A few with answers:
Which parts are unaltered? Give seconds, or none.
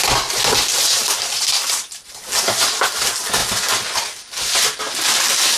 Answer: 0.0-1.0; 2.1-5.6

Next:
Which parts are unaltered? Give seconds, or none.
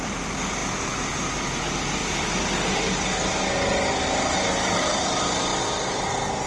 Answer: 2.0-4.0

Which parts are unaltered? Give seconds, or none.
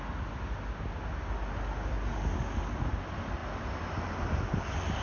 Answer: 0.0-5.0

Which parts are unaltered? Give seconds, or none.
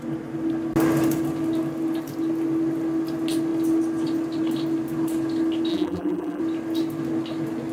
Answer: 0.0-5.7; 6.4-7.7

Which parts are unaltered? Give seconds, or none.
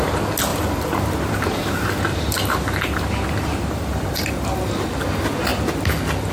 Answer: 0.0-0.5; 4.3-6.3